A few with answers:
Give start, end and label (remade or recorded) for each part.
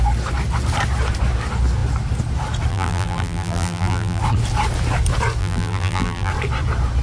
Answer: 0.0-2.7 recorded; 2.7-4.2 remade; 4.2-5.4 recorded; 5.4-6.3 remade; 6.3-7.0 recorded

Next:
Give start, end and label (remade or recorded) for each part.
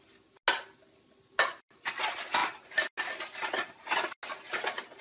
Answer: 0.0-5.0 recorded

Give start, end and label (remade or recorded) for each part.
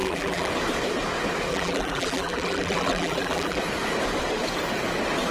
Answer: 0.0-0.5 remade; 0.5-1.5 recorded; 1.5-3.6 remade; 3.6-5.3 recorded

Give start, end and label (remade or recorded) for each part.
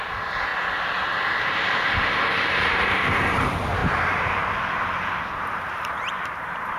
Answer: 0.0-0.5 remade; 0.5-1.4 recorded; 1.4-6.8 remade